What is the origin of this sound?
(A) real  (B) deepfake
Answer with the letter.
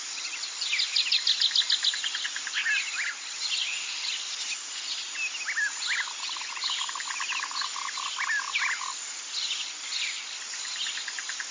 A